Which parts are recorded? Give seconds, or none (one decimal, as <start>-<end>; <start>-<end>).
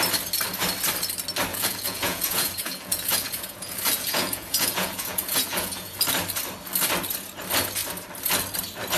0.0-1.5; 6.0-9.0